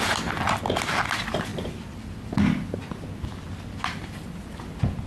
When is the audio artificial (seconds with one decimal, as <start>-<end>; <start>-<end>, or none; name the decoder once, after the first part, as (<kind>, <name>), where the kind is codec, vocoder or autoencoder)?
none